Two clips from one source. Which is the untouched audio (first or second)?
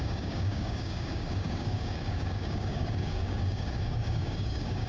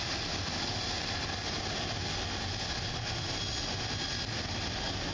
second